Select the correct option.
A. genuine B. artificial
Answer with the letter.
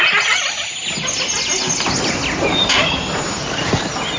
A